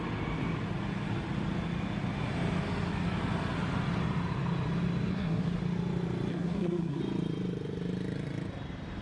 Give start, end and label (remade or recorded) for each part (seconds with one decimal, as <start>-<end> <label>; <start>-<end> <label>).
0.0-5.1 recorded; 5.1-5.6 remade; 5.6-6.3 recorded; 6.3-7.0 remade; 7.0-9.0 recorded